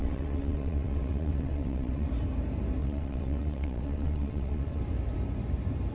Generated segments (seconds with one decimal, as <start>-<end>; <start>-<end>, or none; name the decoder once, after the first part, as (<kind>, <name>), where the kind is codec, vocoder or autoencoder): 0.0-2.1 (vocoder, WaveNeXt); 2.8-4.8